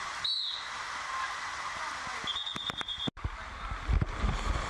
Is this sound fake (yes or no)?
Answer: no